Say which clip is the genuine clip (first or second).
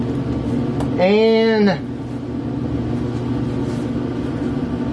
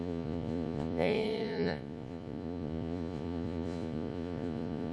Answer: first